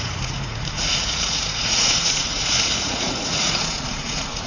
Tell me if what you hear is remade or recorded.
remade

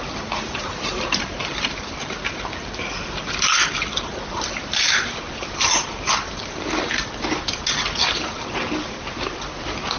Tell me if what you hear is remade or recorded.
recorded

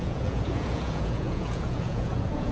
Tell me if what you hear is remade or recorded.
remade